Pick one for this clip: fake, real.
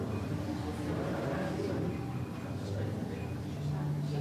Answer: real